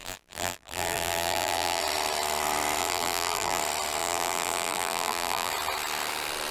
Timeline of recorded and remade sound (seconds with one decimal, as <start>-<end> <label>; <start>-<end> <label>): 0.0-1.8 remade; 1.8-2.8 recorded; 2.8-3.6 remade; 3.6-4.0 recorded; 4.0-5.5 remade; 5.5-6.5 recorded